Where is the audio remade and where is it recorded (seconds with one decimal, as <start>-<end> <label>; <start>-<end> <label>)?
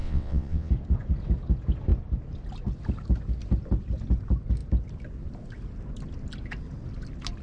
0.0-0.7 remade; 0.7-7.4 recorded